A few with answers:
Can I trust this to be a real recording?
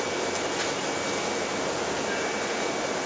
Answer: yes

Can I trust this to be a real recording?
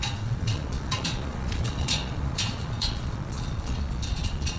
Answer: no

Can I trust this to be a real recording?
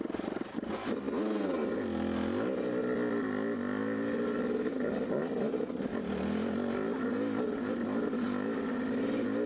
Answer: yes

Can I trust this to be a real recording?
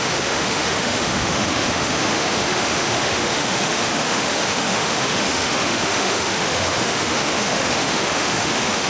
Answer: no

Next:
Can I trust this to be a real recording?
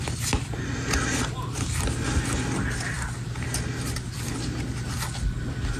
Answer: yes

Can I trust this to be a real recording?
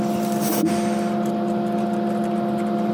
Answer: yes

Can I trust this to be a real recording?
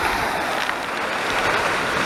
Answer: yes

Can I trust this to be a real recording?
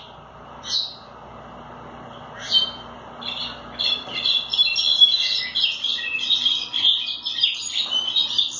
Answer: yes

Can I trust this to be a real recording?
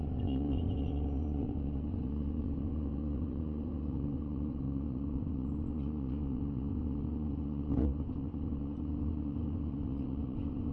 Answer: no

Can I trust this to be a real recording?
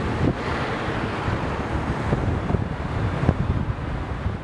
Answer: yes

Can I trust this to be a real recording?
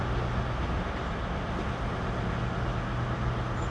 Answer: yes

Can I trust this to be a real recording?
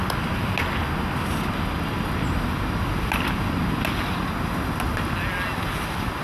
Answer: yes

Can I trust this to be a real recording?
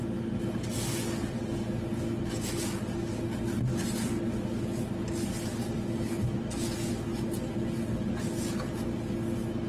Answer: yes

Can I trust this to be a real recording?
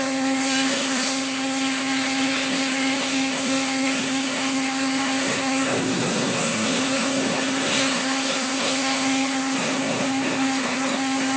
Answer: no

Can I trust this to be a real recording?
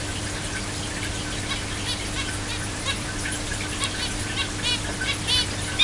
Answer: yes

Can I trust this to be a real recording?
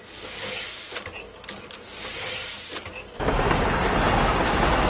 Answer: yes